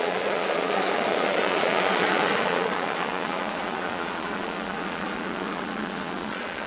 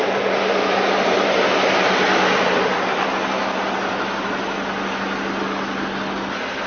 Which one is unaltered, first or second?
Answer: second